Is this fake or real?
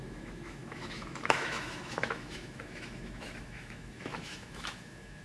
fake